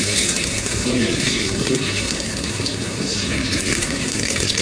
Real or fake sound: fake